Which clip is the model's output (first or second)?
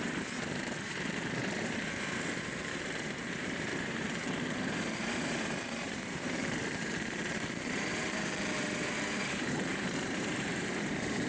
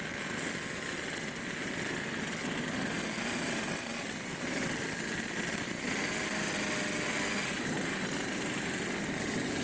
first